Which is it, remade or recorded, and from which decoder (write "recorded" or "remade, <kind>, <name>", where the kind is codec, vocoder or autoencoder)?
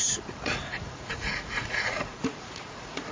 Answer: remade, vocoder, Vocos